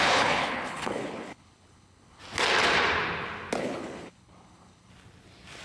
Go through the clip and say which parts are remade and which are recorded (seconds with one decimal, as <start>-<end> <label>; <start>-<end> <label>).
0.0-2.2 remade; 2.2-3.6 recorded; 3.6-4.9 remade; 4.9-5.6 recorded